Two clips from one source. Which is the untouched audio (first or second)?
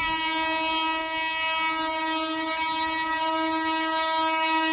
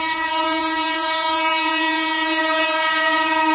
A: first